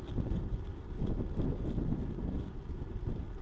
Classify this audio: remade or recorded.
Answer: recorded